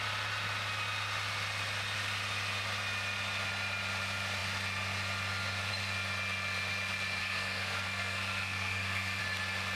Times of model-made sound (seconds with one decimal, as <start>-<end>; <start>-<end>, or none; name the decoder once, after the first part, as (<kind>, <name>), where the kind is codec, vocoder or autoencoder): 7.2-9.2 (codec, SNAC)